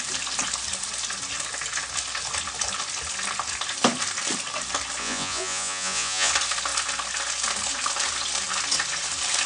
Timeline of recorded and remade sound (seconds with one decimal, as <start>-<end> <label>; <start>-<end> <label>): 0.0-5.0 recorded; 5.0-6.3 remade; 6.3-9.5 recorded